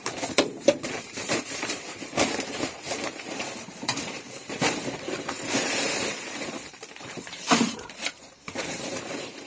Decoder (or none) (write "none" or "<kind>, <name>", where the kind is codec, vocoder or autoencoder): vocoder, BigVGAN v2